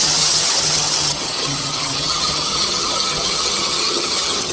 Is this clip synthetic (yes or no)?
yes